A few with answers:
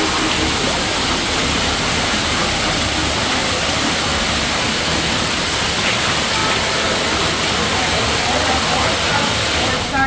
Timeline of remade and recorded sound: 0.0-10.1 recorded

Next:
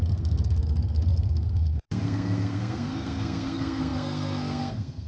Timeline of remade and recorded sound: 0.0-5.1 remade

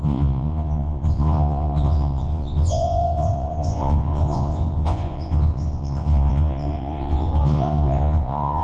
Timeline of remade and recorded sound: 0.0-8.6 remade